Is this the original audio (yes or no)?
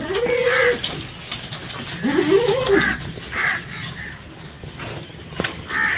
yes